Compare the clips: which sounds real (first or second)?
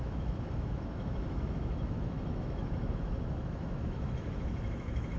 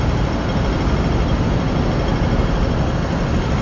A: second